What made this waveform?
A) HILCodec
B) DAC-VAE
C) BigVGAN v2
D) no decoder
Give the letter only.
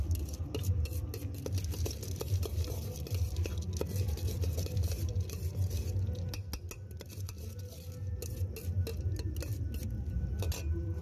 D